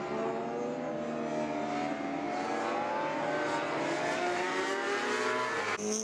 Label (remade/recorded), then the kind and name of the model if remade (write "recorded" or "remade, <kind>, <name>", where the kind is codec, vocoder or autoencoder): recorded